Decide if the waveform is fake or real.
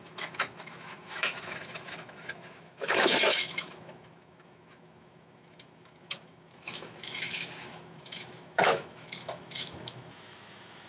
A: fake